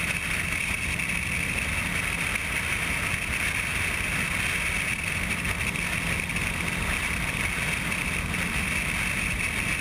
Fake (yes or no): no